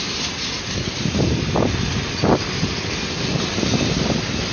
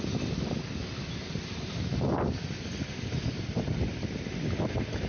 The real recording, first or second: first